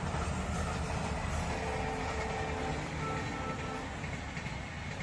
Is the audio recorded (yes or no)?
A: yes